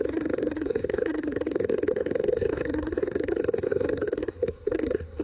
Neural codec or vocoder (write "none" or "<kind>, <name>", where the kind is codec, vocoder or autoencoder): codec, SNAC